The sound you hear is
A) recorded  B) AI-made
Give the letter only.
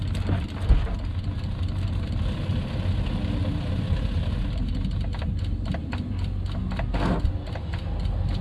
A